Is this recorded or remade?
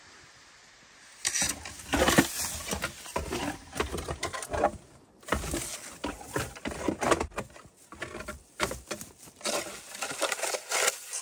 recorded